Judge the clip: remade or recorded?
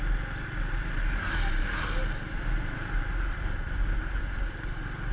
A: recorded